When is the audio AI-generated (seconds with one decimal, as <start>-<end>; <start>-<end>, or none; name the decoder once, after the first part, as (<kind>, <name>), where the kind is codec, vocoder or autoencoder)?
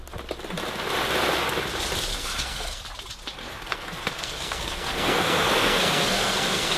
2.1-2.8 (codec, SNAC); 3.4-6.8